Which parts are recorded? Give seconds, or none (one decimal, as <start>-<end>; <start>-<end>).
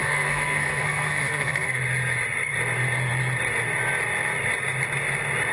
1.8-5.5